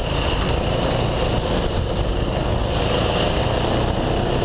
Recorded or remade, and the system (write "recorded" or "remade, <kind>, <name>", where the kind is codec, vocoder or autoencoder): recorded